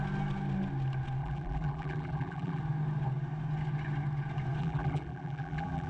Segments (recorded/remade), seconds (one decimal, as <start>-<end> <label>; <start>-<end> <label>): 0.0-1.2 recorded; 1.2-2.6 remade; 2.6-4.6 recorded; 4.6-5.9 remade